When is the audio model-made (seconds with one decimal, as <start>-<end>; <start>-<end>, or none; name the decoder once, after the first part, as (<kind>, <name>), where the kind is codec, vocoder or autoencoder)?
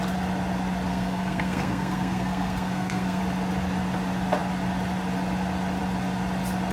0.9-3.2 (codec, SNAC)